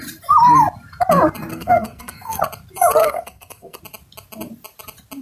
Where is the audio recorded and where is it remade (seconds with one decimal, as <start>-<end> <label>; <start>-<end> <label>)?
0.0-1.5 recorded; 1.5-2.4 remade; 2.4-3.0 recorded; 3.0-3.8 remade; 3.8-5.2 recorded